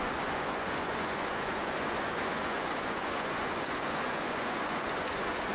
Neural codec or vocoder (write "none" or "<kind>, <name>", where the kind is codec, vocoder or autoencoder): vocoder, Vocos